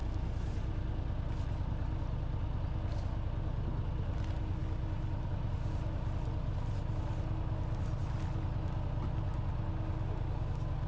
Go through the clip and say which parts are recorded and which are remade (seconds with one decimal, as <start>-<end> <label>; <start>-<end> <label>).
0.0-4.6 recorded; 4.6-5.3 remade; 5.3-10.9 recorded